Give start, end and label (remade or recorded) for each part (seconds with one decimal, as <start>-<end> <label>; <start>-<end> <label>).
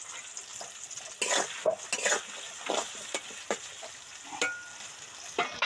0.0-5.7 recorded